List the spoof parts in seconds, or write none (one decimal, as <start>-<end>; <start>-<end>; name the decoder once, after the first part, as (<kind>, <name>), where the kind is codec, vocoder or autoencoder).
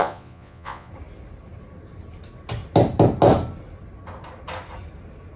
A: 0.0-0.9 (vocoder, Vocos)